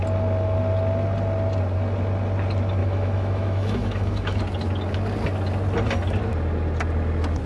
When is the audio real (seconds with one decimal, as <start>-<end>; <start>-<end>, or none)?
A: 0.0-2.8; 4.4-7.5